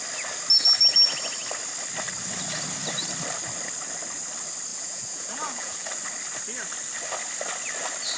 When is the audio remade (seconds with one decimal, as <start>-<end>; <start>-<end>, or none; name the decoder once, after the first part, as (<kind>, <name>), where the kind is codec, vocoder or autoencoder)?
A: 4.7-5.9 (vocoder, Vocos)